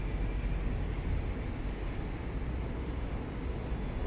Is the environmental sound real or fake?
real